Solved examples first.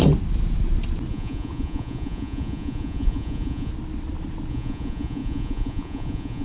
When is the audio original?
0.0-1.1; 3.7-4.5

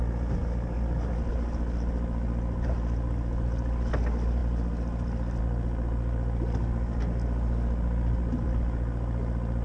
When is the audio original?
0.0-9.6

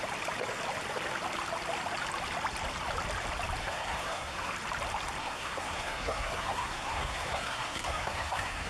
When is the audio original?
0.0-3.6; 4.5-5.2